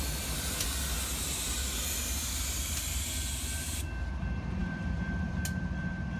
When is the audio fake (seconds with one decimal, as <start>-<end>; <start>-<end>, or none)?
4.6-5.4